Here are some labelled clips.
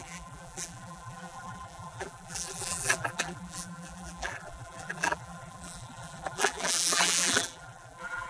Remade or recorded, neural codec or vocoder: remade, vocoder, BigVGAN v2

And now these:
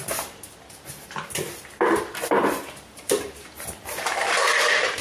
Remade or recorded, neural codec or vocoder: remade, vocoder, BigVGAN v2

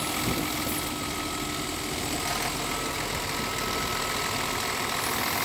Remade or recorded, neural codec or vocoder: recorded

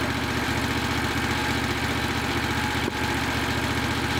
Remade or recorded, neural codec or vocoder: recorded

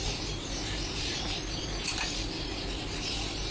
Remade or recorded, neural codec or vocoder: remade, vocoder, BigVGAN v2